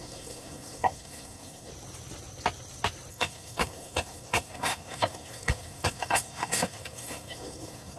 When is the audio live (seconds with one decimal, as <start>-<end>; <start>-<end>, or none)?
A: 1.7-3.1